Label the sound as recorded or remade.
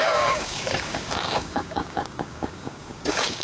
remade